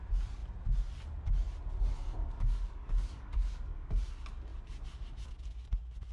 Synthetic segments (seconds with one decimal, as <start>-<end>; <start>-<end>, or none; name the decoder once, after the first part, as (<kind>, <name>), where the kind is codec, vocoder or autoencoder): 2.2-4.0 (codec, DAC)